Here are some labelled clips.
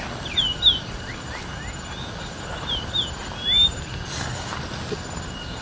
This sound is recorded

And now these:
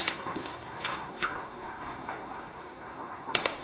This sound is remade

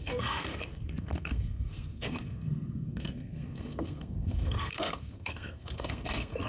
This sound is remade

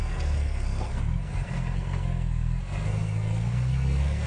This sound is remade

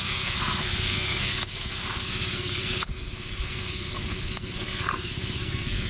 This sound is remade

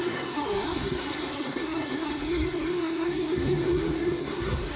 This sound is remade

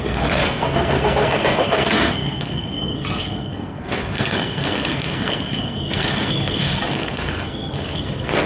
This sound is remade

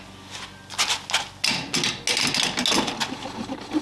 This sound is recorded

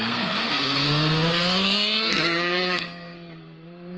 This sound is remade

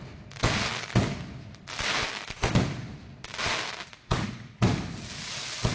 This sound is recorded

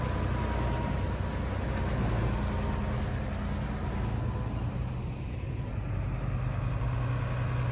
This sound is recorded